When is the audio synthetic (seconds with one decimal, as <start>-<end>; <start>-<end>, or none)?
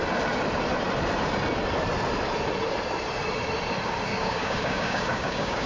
4.1-5.7